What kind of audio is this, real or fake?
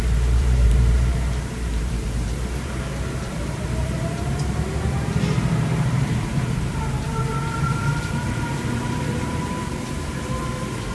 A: fake